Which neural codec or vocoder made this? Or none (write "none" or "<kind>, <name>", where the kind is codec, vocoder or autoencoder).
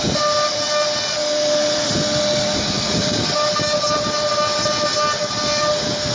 none